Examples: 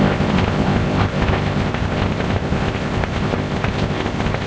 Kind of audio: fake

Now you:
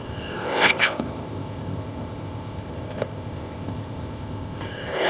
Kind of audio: fake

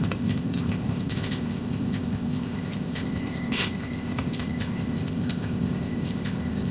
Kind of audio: fake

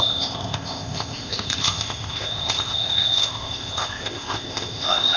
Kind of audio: fake